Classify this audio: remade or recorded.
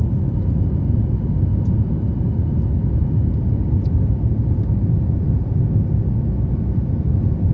recorded